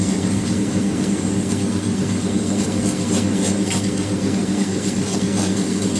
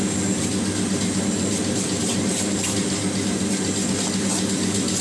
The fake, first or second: first